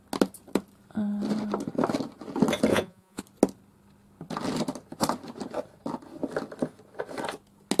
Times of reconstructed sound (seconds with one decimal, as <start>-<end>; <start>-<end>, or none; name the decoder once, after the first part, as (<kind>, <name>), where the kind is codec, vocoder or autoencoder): 2.7-3.2 (vocoder, Vocos)